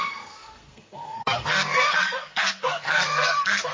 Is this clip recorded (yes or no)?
no